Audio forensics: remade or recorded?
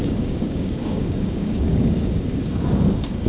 remade